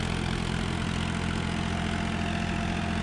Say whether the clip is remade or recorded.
recorded